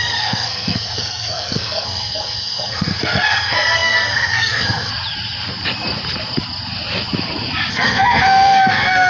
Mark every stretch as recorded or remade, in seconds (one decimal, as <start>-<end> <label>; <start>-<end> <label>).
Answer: 0.0-4.9 remade; 4.9-7.7 recorded; 7.7-9.1 remade